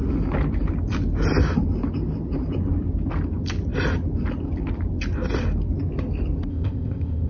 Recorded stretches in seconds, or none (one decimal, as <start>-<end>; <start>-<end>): 0.0-6.5